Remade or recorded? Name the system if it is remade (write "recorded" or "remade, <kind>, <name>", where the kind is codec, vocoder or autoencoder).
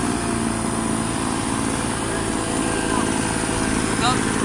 recorded